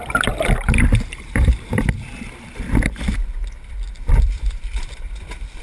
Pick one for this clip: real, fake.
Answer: fake